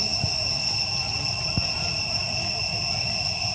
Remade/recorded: recorded